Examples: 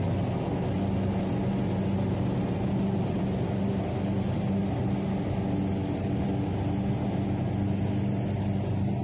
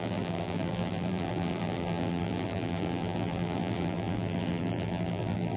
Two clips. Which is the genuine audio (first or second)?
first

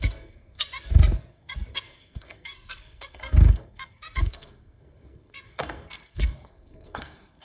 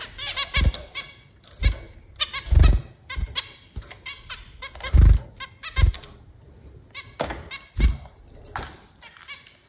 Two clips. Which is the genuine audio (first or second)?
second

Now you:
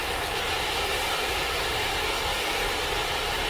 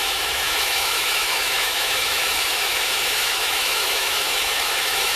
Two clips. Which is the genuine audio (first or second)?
first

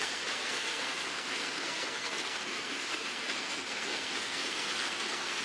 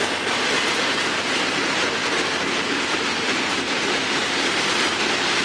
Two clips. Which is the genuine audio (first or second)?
second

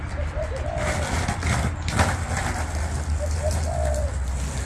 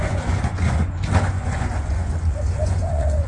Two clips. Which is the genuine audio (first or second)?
first